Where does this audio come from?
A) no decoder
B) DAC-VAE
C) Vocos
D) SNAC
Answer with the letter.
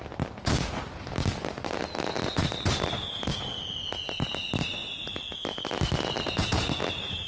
A